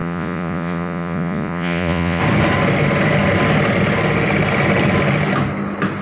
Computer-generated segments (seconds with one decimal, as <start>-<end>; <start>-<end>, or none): 0.0-2.2

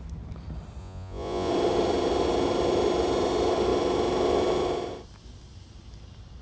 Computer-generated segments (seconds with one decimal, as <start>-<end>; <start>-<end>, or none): 0.8-1.5

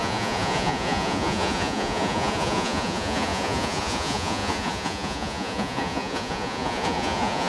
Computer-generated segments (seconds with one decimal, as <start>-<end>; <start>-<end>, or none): 0.0-7.5

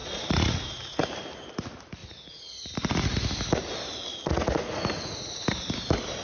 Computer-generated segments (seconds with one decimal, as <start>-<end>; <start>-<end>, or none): 0.0-1.0; 2.0-2.7; 4.1-5.5